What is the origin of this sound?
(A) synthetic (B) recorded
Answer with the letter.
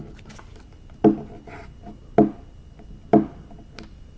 B